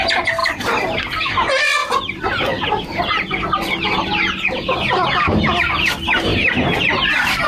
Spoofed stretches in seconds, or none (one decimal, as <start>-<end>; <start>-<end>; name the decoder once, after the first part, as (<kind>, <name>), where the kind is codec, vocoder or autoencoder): none